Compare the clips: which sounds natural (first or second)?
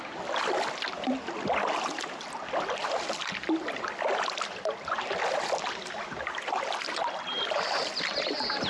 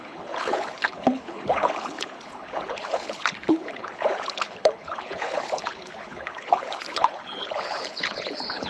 first